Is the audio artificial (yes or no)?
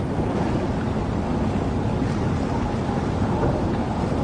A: no